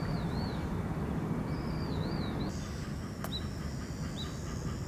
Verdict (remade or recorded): recorded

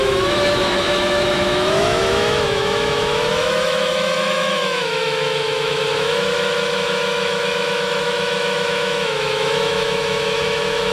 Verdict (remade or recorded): remade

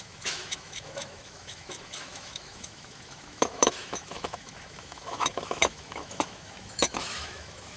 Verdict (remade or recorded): remade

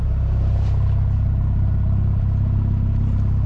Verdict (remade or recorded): recorded